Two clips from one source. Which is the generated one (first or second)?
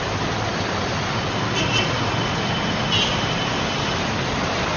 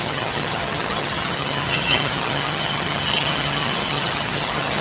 second